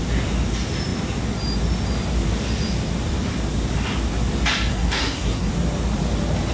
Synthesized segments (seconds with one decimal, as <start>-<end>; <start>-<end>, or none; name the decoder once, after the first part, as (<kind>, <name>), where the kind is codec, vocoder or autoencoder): 4.7-5.5 (codec, SNAC)